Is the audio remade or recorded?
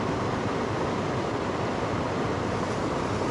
recorded